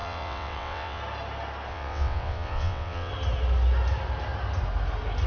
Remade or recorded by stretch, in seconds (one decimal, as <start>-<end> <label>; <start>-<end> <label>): 0.0-1.0 remade; 1.0-1.7 recorded; 1.7-3.1 remade; 3.1-5.3 recorded